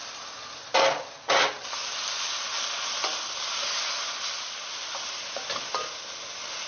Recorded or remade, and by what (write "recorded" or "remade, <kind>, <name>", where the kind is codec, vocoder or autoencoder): recorded